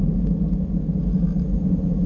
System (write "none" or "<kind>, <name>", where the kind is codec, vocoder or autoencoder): none